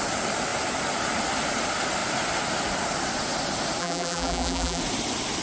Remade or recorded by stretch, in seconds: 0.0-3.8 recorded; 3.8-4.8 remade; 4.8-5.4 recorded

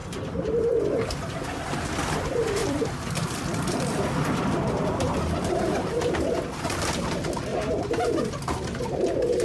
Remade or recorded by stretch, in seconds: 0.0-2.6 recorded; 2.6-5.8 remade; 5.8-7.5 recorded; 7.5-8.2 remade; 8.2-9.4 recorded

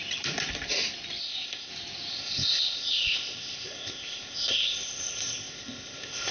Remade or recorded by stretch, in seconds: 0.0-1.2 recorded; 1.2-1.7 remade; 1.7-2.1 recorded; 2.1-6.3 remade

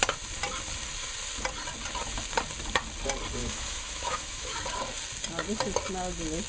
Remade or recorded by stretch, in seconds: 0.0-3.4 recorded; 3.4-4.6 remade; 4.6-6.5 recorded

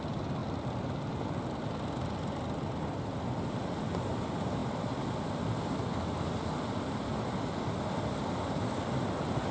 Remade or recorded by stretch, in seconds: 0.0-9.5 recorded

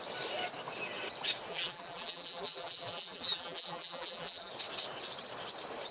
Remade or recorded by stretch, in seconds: 0.0-1.5 recorded; 1.5-4.5 remade; 4.5-5.9 recorded

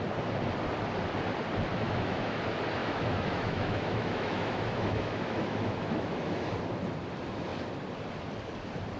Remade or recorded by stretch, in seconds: 0.0-1.7 recorded; 1.7-2.4 remade; 2.4-2.8 recorded; 2.8-6.5 remade; 6.5-9.0 recorded

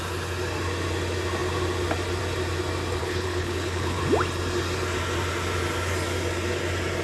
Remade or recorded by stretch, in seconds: 0.0-3.0 recorded; 3.0-4.0 remade; 4.0-7.0 recorded